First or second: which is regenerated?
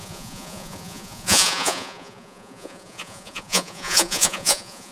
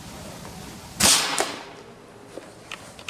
first